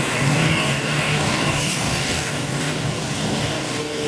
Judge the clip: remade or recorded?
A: remade